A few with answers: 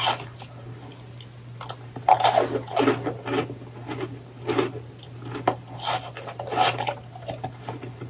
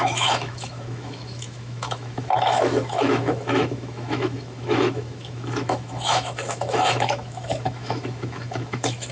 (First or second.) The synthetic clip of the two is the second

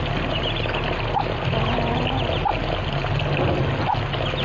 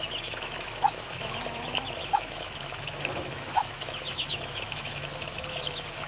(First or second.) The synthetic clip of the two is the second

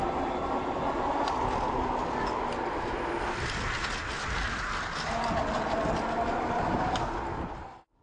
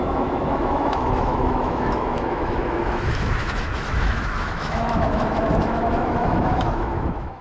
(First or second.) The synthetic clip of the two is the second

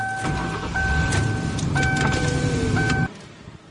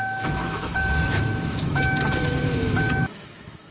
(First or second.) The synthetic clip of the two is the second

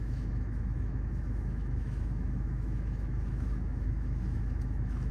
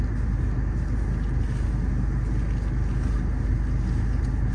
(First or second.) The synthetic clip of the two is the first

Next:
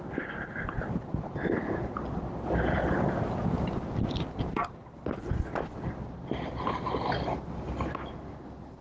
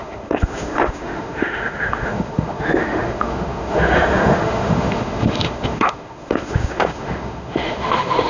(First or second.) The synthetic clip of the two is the second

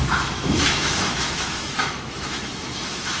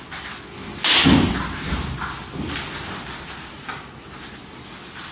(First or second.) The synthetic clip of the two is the first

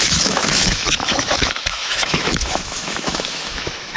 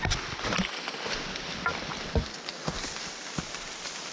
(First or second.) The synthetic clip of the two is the first